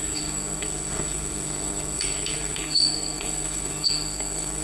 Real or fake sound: fake